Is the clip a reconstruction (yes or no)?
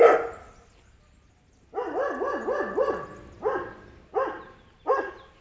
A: no